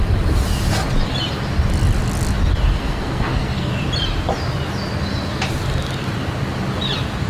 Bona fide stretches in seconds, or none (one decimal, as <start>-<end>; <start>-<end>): 0.0-2.7; 3.7-7.3